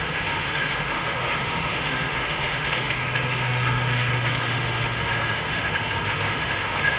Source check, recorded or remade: remade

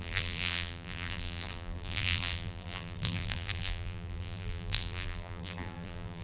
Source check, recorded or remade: remade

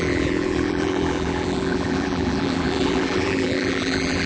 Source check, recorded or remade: remade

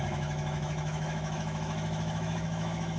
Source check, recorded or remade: remade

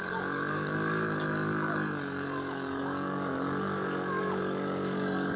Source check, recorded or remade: remade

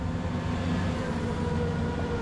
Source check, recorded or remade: recorded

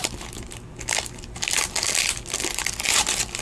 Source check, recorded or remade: recorded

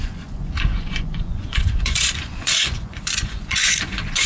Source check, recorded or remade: remade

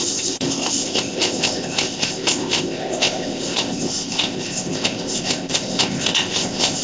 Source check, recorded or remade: remade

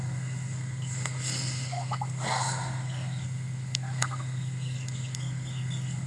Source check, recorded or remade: remade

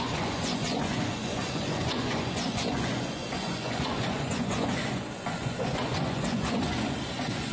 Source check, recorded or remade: remade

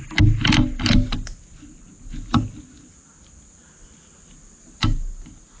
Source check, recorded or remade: recorded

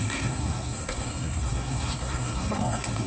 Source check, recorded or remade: remade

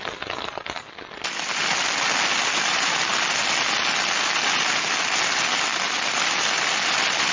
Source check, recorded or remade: recorded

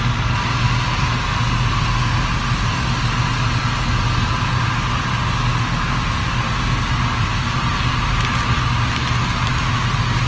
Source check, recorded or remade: recorded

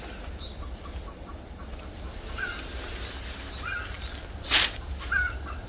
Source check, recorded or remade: recorded